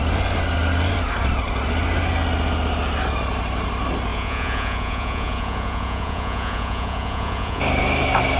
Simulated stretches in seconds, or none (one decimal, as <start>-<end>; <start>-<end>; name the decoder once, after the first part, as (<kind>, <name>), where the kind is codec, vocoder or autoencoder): 4.1-7.6 (vocoder, Vocos)